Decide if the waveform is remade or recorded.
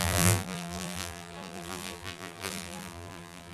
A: remade